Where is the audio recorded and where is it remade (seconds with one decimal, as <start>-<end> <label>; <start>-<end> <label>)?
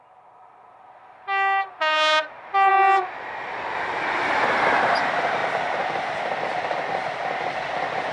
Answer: 0.0-8.1 recorded